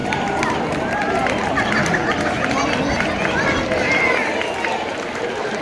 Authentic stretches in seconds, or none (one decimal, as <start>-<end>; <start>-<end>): 2.0-4.8